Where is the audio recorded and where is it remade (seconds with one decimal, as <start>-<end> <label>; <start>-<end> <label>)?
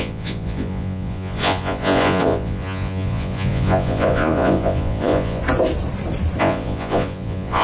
0.0-5.4 remade; 5.4-6.4 recorded; 6.4-7.6 remade